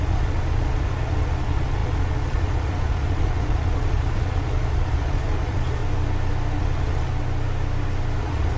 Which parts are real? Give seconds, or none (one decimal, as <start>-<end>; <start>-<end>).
5.8-6.6; 7.1-8.2